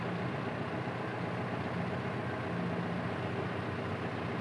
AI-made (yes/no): no